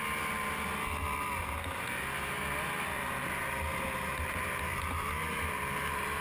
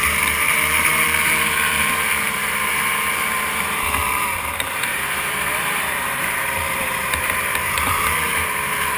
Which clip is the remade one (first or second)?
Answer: second